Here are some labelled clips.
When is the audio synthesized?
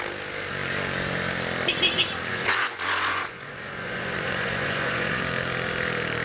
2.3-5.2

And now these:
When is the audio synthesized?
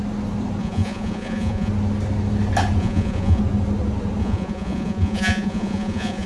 0.6-1.7; 2.8-3.4; 4.2-6.3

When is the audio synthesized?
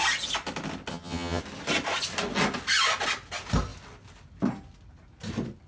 0.9-1.4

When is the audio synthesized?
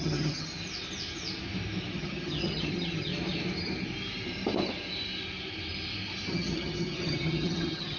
0.0-0.5; 1.9-3.1; 6.3-8.0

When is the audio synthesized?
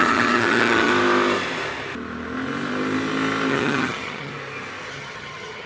0.0-0.9; 3.5-4.3; 4.9-5.7